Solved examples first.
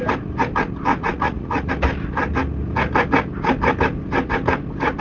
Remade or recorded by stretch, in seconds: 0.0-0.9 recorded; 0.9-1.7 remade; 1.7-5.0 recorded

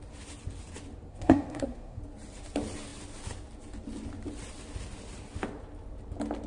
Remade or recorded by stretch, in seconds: 0.0-1.1 recorded; 1.1-2.0 remade; 2.0-6.5 recorded

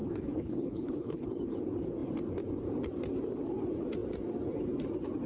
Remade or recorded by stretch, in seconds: 0.0-1.3 remade; 1.3-5.3 recorded

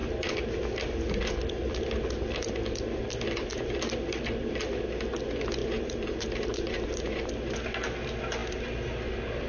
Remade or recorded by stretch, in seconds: 0.0-5.6 recorded; 5.6-7.3 remade; 7.3-9.5 recorded

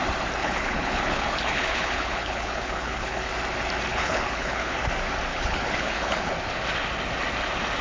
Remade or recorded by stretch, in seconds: 0.0-0.4 recorded; 0.4-3.3 remade; 3.3-3.9 recorded; 3.9-4.8 remade; 4.8-5.3 recorded; 5.3-6.3 remade; 6.3-7.8 recorded

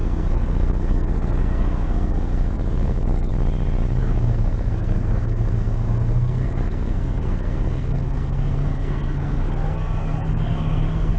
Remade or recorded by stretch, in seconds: 0.0-3.3 remade; 3.3-4.0 recorded; 4.0-11.2 remade

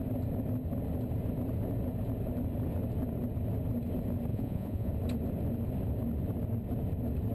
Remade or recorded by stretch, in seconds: 0.0-4.3 recorded; 4.3-4.9 remade; 4.9-7.3 recorded